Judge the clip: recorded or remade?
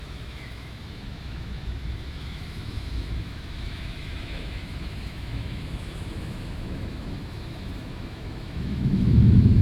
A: remade